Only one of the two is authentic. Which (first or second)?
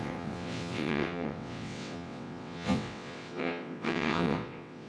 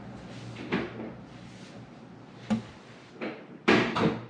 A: second